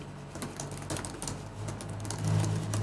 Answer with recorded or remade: recorded